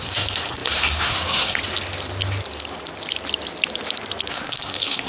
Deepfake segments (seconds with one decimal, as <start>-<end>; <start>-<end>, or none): 0.0-1.6; 4.3-5.1